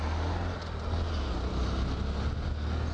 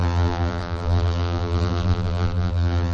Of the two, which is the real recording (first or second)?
first